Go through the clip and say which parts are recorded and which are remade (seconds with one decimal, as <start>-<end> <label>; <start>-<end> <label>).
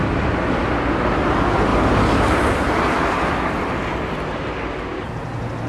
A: 0.0-5.7 recorded